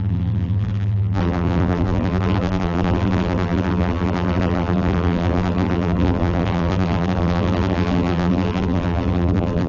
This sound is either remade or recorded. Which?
remade